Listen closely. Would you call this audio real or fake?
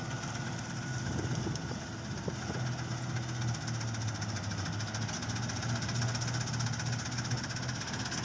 real